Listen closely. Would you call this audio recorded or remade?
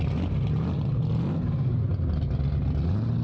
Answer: recorded